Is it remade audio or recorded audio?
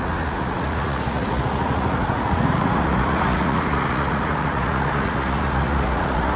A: remade